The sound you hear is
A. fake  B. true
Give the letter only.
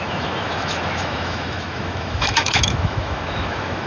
A